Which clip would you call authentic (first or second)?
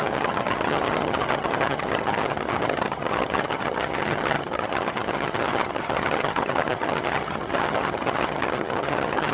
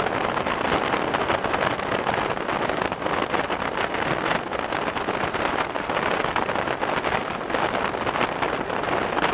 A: second